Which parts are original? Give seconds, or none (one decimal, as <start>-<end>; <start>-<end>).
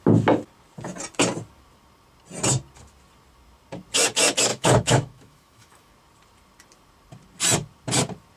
0.0-4.5; 5.9-8.4